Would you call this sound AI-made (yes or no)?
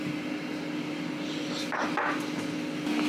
no